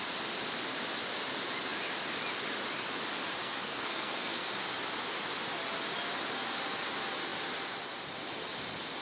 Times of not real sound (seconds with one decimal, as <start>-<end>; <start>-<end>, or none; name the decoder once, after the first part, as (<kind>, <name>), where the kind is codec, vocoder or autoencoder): 3.4-4.5 (codec, SNAC)